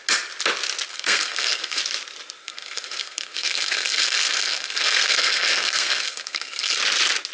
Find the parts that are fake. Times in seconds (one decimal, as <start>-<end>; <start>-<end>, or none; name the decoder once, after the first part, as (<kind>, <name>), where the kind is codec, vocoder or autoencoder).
0.9-1.8 (codec, SNAC); 2.4-6.8